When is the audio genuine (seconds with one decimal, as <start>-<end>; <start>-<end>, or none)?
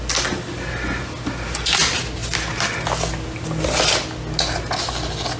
0.0-5.4